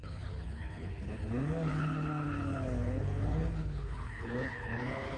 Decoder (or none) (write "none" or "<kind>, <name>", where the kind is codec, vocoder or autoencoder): codec, HILCodec